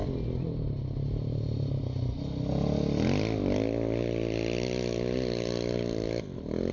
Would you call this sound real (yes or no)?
yes